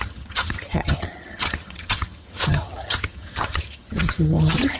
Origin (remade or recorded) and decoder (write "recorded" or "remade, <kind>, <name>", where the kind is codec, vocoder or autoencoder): remade, vocoder, HiFi-GAN